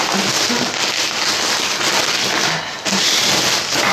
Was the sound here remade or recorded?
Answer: recorded